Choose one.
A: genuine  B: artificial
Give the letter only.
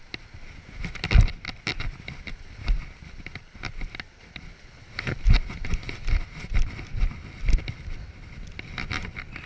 A